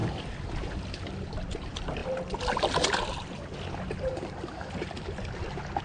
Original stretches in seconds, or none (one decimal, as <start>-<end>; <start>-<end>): 0.0-5.8